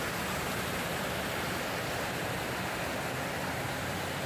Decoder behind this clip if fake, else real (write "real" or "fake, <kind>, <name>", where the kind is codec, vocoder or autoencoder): real